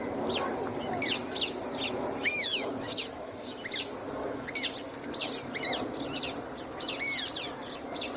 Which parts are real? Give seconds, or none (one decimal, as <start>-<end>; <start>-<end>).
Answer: 0.0-2.2; 3.6-4.0; 4.5-8.2